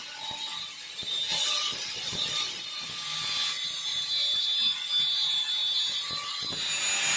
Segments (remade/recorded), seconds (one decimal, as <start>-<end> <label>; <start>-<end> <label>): 0.0-1.3 recorded; 1.3-2.6 remade; 2.6-7.2 recorded